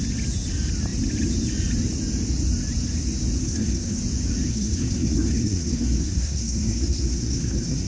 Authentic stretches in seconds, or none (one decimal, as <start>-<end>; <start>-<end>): 0.0-3.4; 4.0-4.5